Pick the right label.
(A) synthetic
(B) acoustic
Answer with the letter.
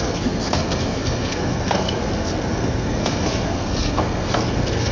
A